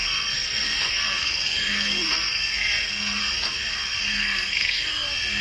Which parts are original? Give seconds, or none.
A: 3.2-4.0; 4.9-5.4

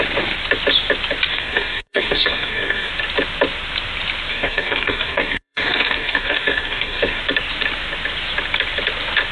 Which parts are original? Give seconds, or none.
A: 0.0-1.3; 2.9-4.3; 7.2-9.3

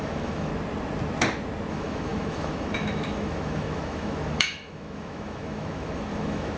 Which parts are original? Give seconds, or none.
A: 0.5-1.7